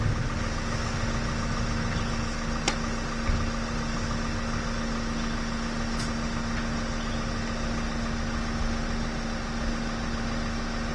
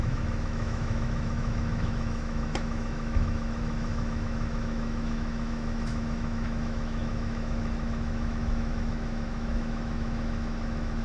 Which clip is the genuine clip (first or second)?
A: first